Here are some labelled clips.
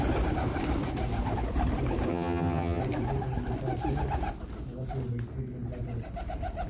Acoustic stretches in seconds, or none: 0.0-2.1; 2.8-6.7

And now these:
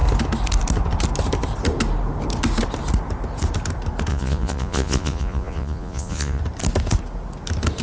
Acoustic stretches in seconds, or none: 0.0-4.1; 6.4-7.8

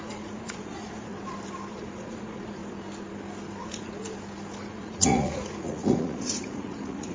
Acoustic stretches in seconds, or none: 1.1-1.7; 2.6-3.6; 4.0-4.6

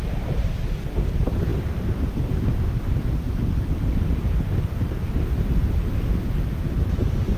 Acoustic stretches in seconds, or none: 0.0-7.4

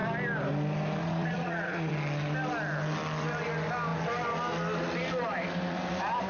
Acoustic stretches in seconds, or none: 0.0-1.0; 1.9-6.3